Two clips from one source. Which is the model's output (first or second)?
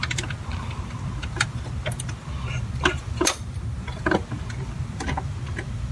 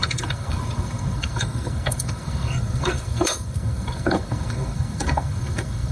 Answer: second